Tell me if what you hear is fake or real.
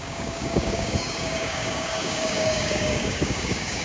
fake